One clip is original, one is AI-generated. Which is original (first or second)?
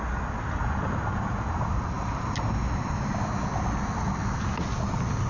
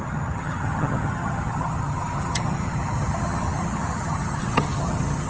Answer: first